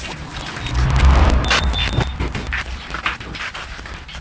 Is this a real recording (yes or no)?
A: no